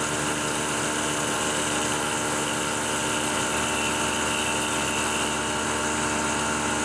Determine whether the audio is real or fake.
real